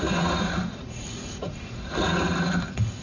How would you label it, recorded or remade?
remade